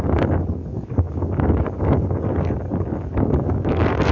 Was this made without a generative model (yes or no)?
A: no